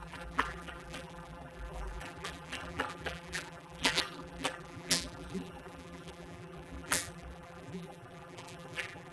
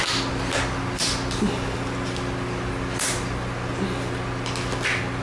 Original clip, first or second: second